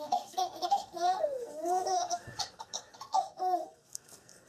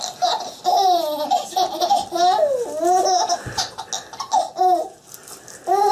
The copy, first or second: first